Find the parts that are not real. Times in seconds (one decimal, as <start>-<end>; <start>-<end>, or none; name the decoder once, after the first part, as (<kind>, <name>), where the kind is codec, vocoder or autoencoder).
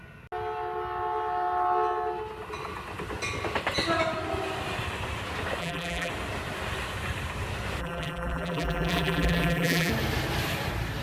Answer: 5.6-6.1 (vocoder, BigVGAN v2); 7.8-9.9